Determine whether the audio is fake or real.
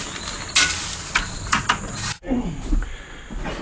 real